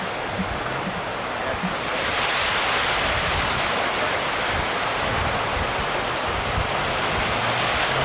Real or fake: real